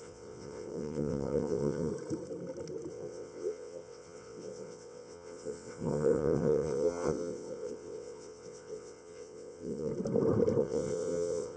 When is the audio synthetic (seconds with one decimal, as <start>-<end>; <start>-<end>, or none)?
0.0-1.9; 2.9-9.9; 10.6-11.6